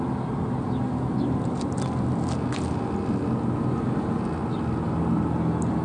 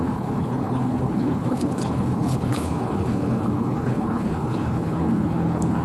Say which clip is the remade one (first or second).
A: second